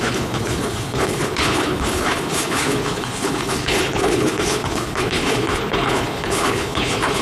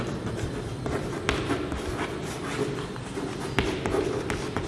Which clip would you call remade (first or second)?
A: first